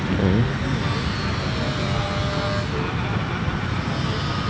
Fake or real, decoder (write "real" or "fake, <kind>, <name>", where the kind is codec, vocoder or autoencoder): real